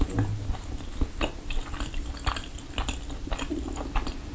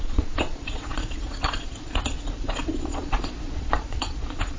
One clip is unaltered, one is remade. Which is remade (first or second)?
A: second